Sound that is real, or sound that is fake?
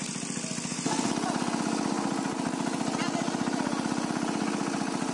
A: real